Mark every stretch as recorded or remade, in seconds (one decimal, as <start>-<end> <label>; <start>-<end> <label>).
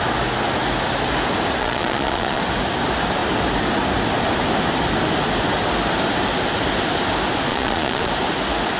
0.0-1.6 recorded; 1.6-2.4 remade; 2.4-7.5 recorded; 7.5-8.1 remade; 8.1-8.8 recorded